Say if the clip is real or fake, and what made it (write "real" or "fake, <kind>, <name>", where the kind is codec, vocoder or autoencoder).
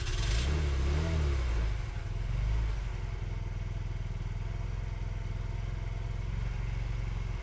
real